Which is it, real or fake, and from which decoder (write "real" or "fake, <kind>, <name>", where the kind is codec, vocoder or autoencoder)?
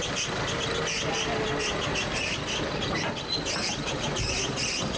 real